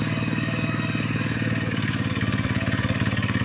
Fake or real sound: fake